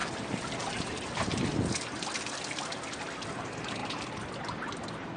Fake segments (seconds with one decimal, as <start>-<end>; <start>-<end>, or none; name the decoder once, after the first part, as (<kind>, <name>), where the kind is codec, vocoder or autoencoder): 0.0-3.8 (vocoder, BigVGAN v2); 4.4-5.2

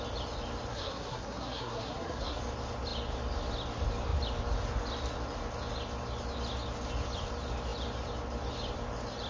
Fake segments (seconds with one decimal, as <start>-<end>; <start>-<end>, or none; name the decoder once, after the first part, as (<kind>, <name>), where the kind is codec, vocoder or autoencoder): 0.7-2.4 (codec, SNAC)